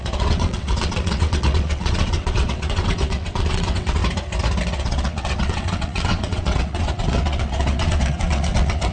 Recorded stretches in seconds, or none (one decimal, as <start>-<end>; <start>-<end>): 4.0-4.6